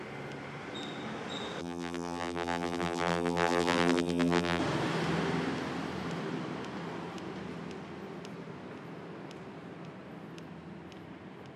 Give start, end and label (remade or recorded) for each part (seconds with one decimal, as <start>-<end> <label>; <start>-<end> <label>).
0.0-1.6 recorded; 1.6-4.6 remade; 4.6-11.6 recorded